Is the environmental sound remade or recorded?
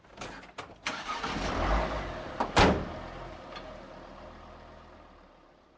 recorded